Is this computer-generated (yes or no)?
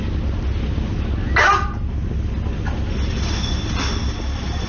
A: no